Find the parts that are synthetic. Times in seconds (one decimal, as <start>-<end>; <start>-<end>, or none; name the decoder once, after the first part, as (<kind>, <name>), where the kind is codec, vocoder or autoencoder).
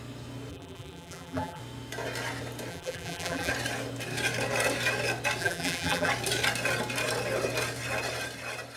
0.5-1.6 (vocoder, BigVGAN v2); 2.7-3.5; 5.4-6.1